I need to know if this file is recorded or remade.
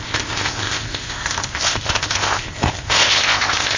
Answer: remade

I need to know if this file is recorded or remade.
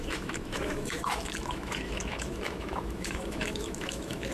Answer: remade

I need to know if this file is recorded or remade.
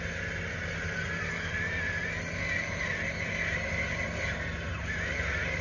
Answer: recorded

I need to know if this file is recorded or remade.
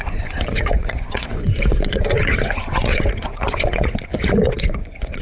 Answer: remade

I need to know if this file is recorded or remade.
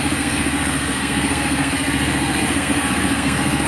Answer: remade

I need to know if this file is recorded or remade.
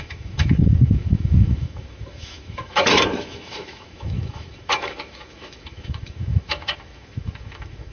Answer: remade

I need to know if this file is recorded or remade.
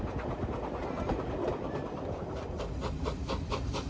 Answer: recorded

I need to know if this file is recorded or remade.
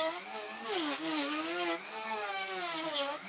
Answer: remade